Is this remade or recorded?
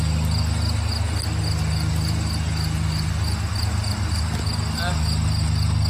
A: recorded